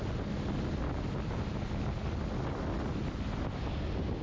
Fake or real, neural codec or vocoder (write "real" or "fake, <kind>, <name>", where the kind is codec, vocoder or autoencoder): real